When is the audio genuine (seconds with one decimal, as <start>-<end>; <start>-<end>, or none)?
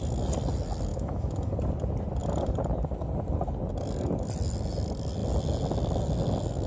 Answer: 0.0-0.9; 1.5-6.7